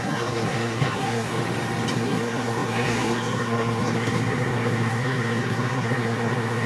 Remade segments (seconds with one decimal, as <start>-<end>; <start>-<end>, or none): 0.0-1.4; 1.9-6.7